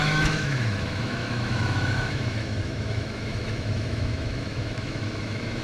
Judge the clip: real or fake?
fake